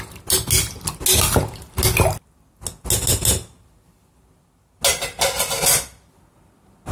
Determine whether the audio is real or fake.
real